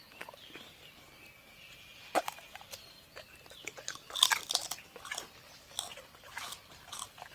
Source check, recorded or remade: recorded